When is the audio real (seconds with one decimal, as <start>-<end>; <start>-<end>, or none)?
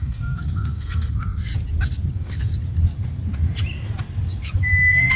1.5-2.1; 2.5-4.6